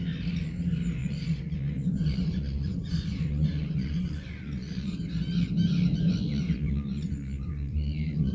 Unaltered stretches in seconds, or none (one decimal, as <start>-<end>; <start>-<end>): 0.0-1.0; 5.0-6.3